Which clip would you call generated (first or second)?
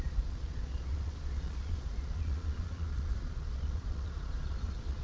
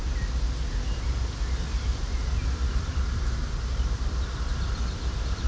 first